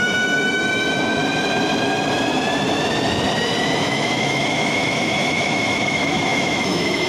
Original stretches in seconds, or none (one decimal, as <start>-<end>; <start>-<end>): 1.2-3.8